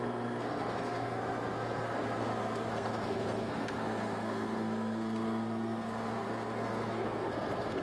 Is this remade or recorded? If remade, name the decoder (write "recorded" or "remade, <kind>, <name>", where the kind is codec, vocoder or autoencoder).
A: remade, codec, SNAC